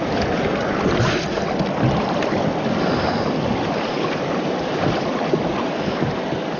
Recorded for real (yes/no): yes